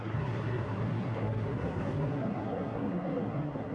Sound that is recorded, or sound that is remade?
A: remade